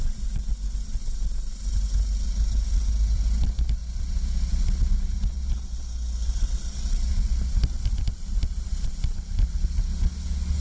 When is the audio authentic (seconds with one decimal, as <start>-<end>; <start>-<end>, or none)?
0.0-10.6

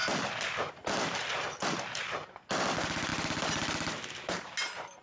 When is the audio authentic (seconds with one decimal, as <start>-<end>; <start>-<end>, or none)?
0.0-5.0